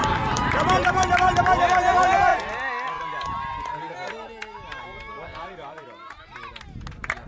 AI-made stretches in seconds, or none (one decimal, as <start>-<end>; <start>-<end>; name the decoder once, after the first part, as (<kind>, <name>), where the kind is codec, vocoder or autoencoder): 0.0-1.4 (vocoder, BigVGAN v2); 5.3-6.2